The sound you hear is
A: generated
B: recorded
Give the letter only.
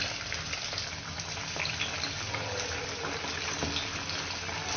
B